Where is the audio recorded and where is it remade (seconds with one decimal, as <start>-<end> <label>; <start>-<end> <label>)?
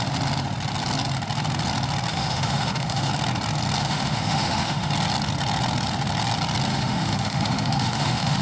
0.0-2.1 recorded; 2.1-3.1 remade; 3.1-3.8 recorded; 3.8-4.9 remade; 4.9-6.7 recorded; 6.7-8.4 remade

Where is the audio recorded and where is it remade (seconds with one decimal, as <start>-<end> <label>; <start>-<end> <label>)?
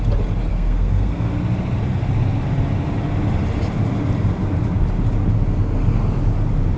0.0-0.5 recorded; 0.5-1.3 remade; 1.3-6.8 recorded